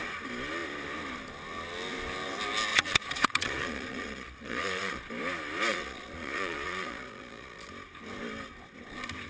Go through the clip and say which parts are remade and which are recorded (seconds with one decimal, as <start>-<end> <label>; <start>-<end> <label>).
0.0-2.7 recorded; 2.7-5.1 remade; 5.1-5.7 recorded; 5.7-7.7 remade; 7.7-9.3 recorded

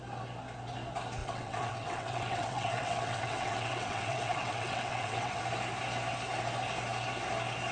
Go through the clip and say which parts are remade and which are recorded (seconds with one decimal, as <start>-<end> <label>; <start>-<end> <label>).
0.0-1.2 recorded; 1.2-5.4 remade; 5.4-7.7 recorded

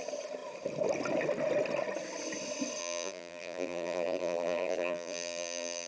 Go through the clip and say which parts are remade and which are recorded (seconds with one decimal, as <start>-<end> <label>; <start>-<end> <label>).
0.0-2.8 recorded; 2.8-5.9 remade

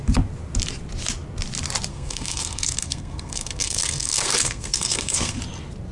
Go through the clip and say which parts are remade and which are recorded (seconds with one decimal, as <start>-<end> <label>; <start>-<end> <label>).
0.0-1.9 recorded; 1.9-5.4 remade; 5.4-5.9 recorded

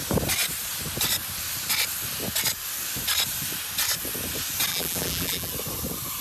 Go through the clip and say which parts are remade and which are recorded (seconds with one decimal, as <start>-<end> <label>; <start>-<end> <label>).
0.0-4.7 recorded; 4.7-5.5 remade; 5.5-6.2 recorded

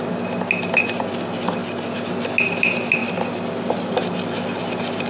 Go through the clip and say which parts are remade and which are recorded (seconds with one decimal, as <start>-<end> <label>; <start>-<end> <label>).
0.0-5.1 recorded

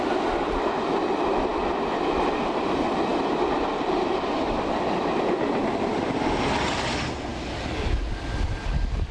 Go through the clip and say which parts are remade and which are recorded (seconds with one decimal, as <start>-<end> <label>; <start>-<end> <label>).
0.0-9.1 recorded